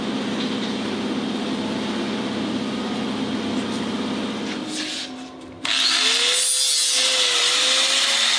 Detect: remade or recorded recorded